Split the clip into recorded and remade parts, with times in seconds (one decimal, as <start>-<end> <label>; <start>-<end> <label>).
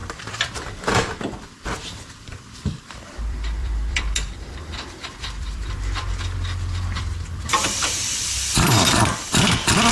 0.0-9.9 remade